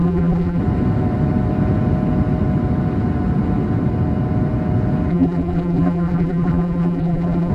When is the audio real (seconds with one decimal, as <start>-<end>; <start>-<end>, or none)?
0.6-5.1